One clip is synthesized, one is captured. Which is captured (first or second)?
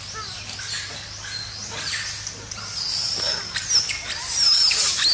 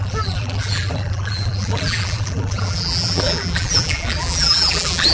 first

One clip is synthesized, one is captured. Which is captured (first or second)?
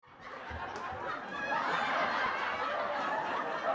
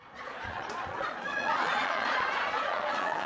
first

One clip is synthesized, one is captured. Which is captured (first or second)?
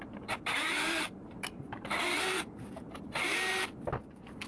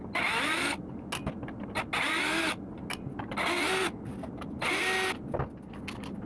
second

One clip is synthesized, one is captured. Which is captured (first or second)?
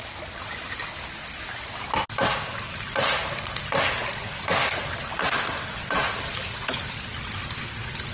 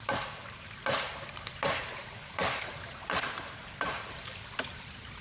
first